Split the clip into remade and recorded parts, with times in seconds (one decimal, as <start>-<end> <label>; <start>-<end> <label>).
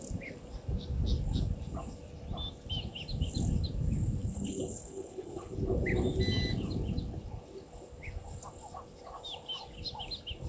0.0-4.2 recorded; 4.2-5.6 remade; 5.6-10.5 recorded